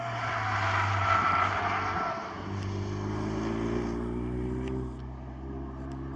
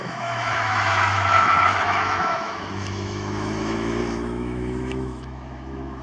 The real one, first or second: first